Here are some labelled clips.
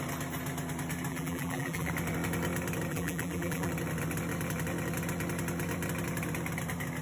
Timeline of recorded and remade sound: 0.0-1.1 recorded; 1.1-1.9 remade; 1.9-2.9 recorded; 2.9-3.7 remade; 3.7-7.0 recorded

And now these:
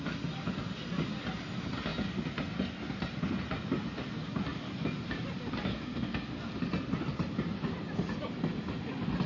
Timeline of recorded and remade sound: 0.0-5.7 recorded; 5.7-6.5 remade; 6.5-9.3 recorded

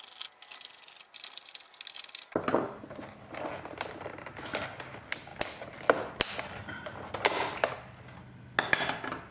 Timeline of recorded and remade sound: 0.0-9.3 recorded

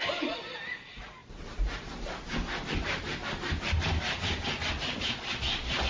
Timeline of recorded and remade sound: 0.0-5.9 recorded